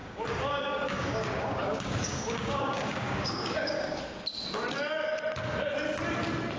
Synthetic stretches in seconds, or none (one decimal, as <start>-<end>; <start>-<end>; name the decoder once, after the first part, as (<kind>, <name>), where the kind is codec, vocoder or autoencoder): 0.0-4.0 (codec, DAC)